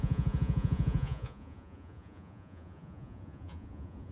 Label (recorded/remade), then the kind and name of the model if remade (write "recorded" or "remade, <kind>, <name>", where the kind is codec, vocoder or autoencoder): remade, vocoder, Vocos